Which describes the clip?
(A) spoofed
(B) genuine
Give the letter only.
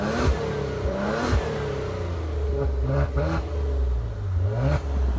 B